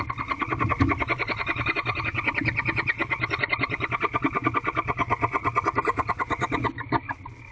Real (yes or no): yes